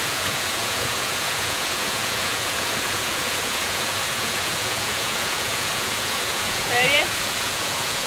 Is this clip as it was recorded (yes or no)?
no